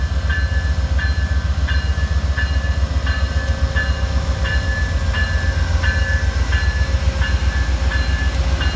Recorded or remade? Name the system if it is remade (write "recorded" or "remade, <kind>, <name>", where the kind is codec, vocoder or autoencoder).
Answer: recorded